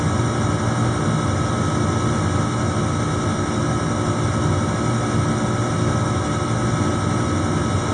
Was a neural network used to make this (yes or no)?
no